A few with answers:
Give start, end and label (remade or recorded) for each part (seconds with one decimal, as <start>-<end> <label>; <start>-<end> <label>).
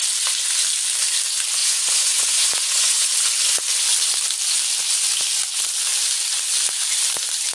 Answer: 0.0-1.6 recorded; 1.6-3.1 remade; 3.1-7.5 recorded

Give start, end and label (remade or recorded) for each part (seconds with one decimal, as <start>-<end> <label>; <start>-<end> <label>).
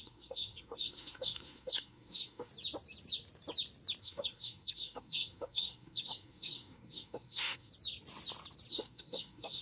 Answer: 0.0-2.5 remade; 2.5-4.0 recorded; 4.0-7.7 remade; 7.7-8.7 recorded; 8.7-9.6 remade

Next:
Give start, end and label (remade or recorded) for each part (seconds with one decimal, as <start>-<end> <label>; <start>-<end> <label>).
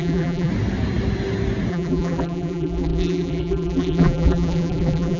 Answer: 0.0-0.5 remade; 0.5-1.7 recorded; 1.7-5.2 remade